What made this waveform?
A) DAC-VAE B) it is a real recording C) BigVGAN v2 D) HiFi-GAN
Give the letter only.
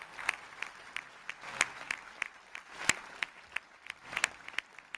B